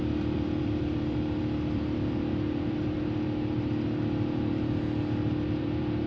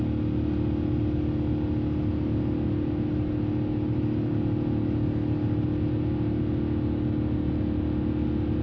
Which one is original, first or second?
second